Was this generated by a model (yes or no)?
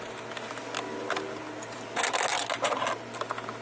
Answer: no